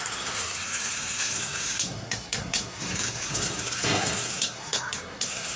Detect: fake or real fake